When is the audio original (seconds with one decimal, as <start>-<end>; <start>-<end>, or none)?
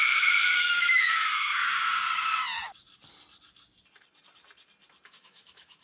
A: 1.6-5.1